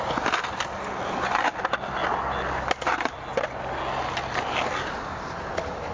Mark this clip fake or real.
real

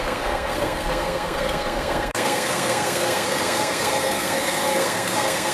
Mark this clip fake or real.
fake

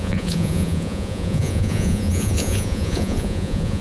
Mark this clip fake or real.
fake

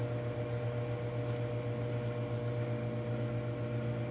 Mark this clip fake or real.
real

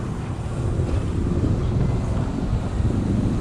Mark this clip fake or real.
real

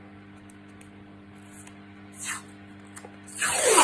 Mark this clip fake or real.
real